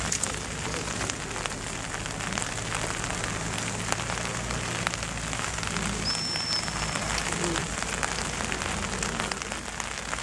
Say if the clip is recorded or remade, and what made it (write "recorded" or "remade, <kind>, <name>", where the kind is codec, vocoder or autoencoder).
recorded